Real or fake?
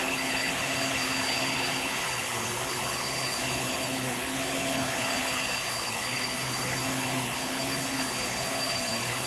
fake